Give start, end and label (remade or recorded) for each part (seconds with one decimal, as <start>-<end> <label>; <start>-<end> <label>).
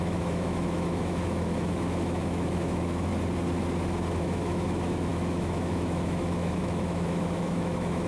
0.0-3.1 remade; 3.1-4.2 recorded; 4.2-8.1 remade